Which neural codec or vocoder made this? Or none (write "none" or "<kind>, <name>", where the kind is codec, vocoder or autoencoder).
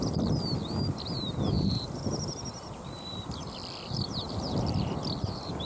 vocoder, BigVGAN v2